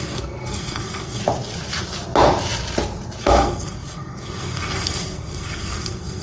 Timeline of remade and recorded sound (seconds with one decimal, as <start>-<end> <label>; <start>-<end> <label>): 0.0-1.2 remade; 1.2-3.2 recorded; 3.2-6.2 remade